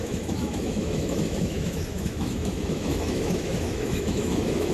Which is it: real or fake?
fake